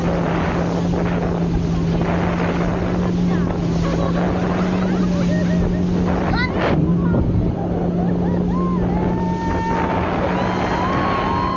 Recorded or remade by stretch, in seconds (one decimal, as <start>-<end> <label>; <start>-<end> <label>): 0.0-11.6 recorded